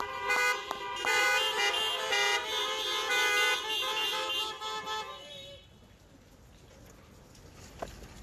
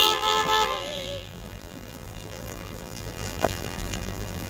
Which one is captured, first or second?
first